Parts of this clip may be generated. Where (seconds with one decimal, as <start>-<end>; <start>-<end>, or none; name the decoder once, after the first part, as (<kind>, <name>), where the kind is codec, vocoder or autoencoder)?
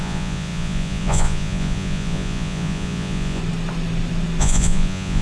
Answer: 0.0-3.4 (vocoder, Vocos); 4.4-5.2